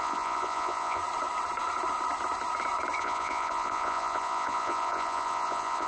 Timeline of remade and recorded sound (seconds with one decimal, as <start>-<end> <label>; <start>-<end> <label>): 0.0-1.0 remade; 1.0-3.0 recorded; 3.0-5.9 remade